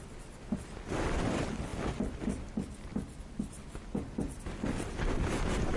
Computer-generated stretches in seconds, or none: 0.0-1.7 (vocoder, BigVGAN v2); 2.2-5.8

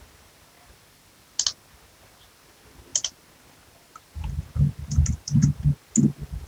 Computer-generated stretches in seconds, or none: none

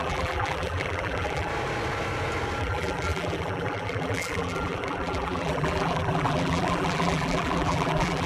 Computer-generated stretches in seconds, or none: 0.0-1.5 (vocoder, BigVGAN v2); 2.6-8.3

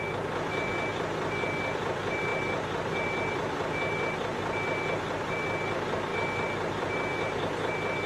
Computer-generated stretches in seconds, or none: none

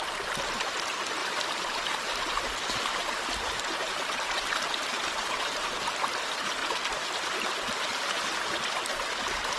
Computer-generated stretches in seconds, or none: 1.2-2.3 (vocoder, BigVGAN v2)

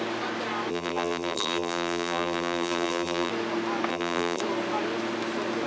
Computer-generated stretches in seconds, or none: 0.7-3.3 (vocoder, BigVGAN v2); 3.9-4.4

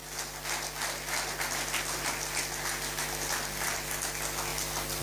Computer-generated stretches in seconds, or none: none